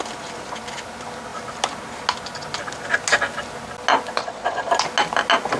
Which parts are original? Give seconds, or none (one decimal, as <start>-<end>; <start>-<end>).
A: 0.0-4.2; 4.7-5.6